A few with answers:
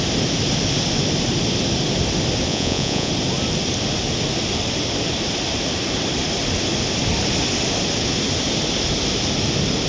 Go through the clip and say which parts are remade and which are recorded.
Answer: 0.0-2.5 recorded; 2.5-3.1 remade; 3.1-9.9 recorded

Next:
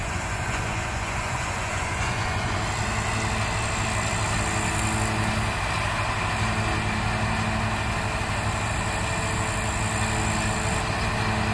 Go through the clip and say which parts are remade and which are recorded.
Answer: 0.0-2.6 remade; 2.6-11.5 recorded

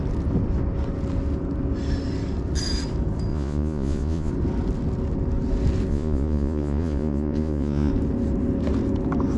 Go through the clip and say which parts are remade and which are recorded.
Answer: 0.0-3.3 recorded; 3.3-4.3 remade; 4.3-5.9 recorded; 5.9-7.9 remade; 7.9-9.4 recorded

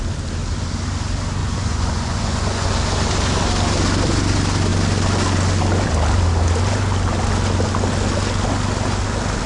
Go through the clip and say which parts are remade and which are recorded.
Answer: 0.0-1.4 recorded; 1.4-2.7 remade; 2.7-9.5 recorded